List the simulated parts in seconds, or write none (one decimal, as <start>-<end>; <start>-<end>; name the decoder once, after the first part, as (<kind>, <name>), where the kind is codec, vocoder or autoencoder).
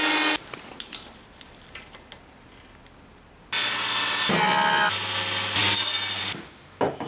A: none